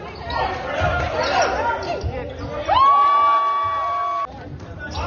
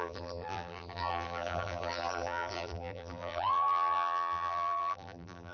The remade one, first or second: second